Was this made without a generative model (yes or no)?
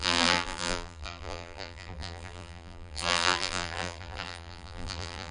no